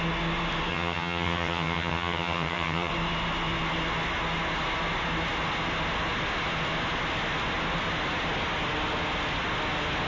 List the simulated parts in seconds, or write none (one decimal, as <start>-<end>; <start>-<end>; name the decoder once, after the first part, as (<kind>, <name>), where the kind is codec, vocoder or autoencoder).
0.7-2.9 (vocoder, HiFi-GAN)